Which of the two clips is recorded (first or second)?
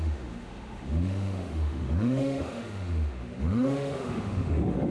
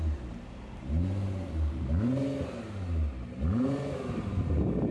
second